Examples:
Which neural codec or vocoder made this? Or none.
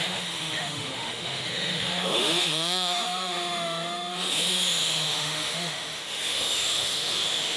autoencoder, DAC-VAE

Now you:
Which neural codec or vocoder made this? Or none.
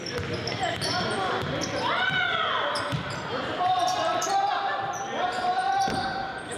vocoder, BigVGAN v2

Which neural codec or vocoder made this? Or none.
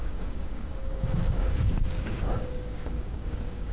codec, DAC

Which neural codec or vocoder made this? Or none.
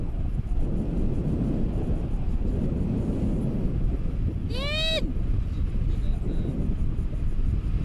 none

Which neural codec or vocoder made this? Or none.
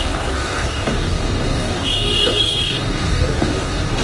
codec, DAC